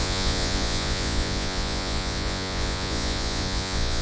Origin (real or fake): fake